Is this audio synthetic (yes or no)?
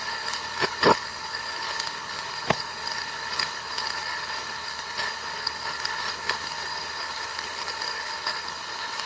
yes